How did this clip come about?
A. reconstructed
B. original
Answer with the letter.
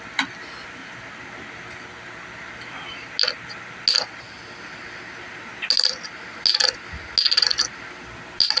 B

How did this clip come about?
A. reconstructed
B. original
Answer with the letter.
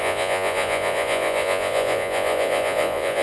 A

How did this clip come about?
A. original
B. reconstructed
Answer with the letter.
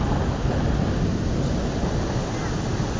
A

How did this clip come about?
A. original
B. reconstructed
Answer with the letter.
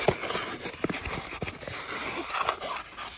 A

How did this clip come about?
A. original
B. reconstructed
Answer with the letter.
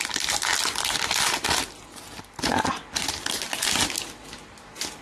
A